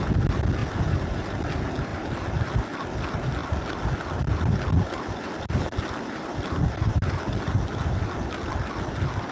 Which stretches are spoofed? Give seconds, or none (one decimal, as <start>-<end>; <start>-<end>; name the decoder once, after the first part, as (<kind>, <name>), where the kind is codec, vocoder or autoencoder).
none